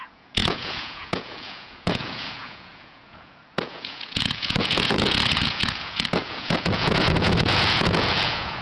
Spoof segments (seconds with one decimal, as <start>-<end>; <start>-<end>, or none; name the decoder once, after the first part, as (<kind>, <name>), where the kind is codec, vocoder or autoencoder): 0.0-8.6 (vocoder, Vocos)